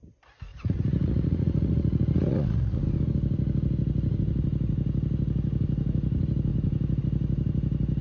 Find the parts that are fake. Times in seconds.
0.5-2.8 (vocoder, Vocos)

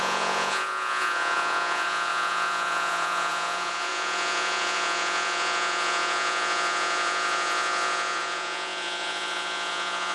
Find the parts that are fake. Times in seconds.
0.0-10.1 (vocoder, Vocos)

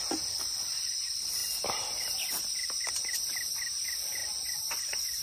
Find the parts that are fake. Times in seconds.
none

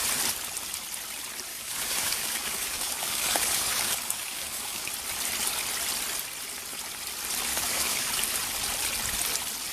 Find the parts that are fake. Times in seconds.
1.5-4.9 (codec, DAC); 7.5-8.1

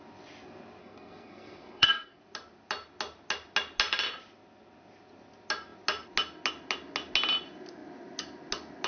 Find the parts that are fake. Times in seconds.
0.8-2.2 (codec, SNAC)

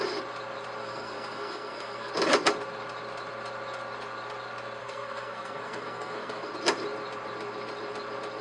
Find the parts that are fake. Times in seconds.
0.8-2.1 (codec, SNAC); 4.8-6.5